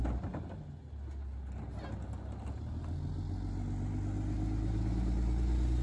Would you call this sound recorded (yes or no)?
yes